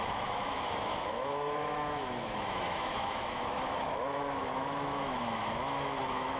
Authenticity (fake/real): fake